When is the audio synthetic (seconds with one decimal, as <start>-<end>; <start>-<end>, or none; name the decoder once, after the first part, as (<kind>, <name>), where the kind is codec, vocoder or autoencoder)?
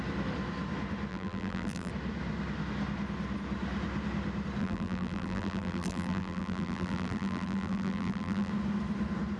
1.1-1.9 (vocoder, BigVGAN v2); 4.6-8.5